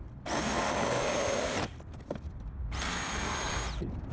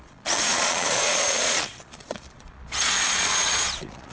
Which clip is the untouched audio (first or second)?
first